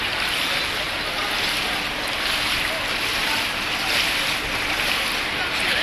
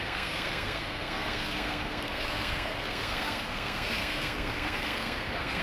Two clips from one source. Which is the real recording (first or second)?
first